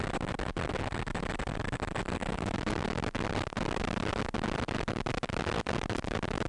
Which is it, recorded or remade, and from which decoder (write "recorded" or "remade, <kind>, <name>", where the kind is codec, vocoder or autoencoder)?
recorded